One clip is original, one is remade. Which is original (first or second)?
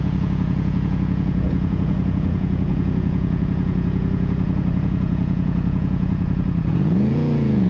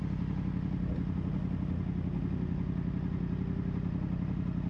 second